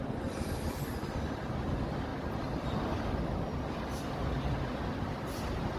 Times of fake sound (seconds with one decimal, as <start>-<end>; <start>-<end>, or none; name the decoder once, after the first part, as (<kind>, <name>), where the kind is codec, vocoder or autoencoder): none